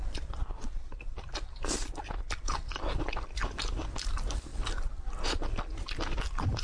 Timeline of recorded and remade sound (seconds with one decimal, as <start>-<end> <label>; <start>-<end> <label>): 0.0-6.6 recorded